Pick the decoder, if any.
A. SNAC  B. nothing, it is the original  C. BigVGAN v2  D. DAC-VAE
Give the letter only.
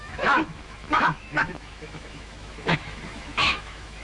D